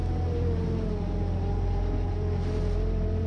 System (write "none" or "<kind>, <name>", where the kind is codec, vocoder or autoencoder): none